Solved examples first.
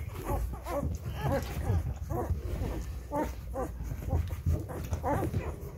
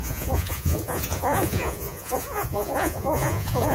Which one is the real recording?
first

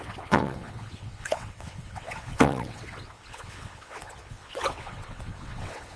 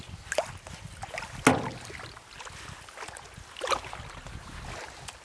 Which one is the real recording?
second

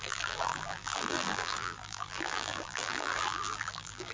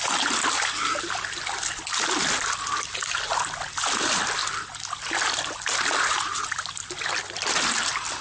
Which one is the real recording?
second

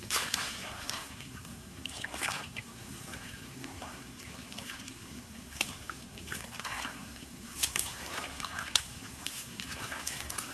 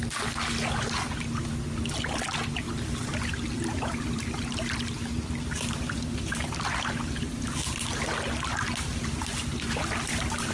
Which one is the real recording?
second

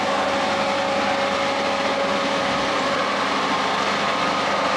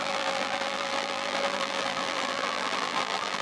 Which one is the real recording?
first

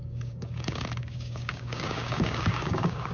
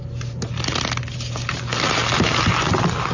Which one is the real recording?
second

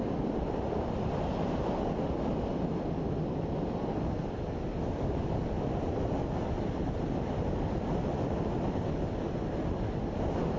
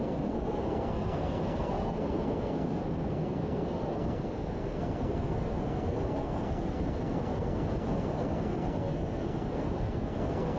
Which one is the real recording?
first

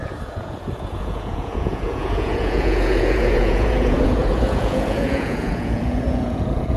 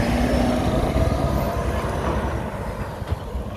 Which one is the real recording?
second